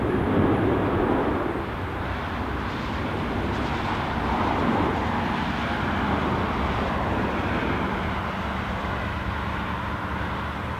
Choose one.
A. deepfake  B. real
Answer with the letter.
B